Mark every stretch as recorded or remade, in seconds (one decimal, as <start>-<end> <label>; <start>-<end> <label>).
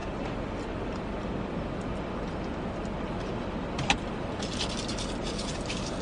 0.0-6.0 recorded